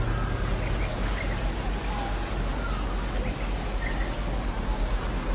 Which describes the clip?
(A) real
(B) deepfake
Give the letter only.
A